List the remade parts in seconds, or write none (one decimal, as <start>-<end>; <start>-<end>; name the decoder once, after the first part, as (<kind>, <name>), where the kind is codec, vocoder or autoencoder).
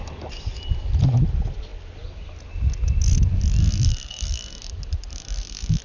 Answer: 3.6-4.6 (codec, SNAC); 5.1-5.8